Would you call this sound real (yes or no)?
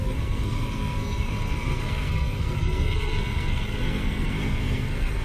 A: no